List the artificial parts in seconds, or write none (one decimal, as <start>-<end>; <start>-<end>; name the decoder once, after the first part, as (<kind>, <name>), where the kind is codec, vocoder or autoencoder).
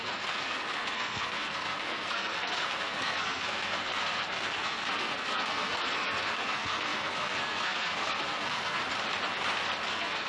0.0-8.8 (codec, SNAC); 9.9-10.3